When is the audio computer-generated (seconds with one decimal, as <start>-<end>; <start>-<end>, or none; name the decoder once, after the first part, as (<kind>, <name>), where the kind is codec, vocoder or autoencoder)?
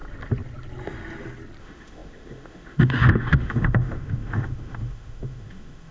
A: 1.6-5.9 (autoencoder, DAC-VAE)